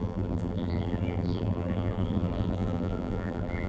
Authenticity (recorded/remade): remade